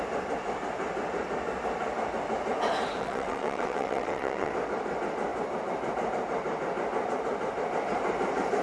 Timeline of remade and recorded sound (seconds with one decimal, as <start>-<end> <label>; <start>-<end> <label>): 0.0-3.0 recorded; 3.0-4.5 remade; 4.5-8.6 recorded